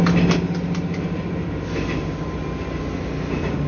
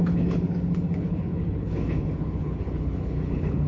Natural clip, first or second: first